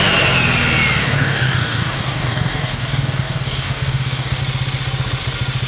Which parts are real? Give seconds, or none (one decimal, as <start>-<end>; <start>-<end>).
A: 0.0-1.0; 4.4-5.7

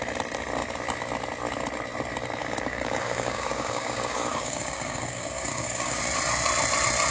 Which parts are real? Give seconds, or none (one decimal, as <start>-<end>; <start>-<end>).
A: 0.0-2.4; 6.0-7.1

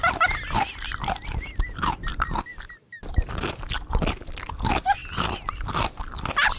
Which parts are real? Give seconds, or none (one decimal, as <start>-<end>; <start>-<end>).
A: 0.0-6.6

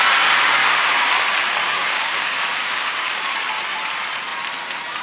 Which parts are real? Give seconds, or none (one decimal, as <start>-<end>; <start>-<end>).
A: 0.0-0.6; 1.1-1.6; 3.6-5.0

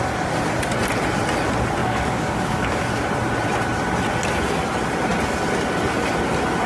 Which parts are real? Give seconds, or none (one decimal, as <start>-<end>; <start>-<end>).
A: 0.0-1.8; 2.8-6.7

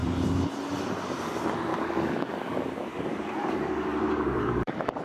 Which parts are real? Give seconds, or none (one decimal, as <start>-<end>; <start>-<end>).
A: 0.0-1.7

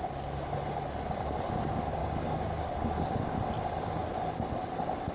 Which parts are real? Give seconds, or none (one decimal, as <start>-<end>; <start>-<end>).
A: 0.0-2.0; 3.3-5.1